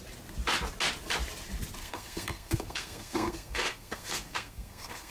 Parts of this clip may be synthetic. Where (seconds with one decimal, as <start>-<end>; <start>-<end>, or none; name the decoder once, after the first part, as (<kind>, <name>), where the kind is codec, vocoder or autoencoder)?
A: 1.8-5.1 (codec, SNAC)